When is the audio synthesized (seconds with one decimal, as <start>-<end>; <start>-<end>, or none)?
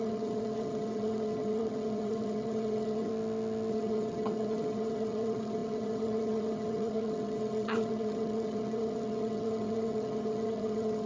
0.0-3.1; 3.7-11.1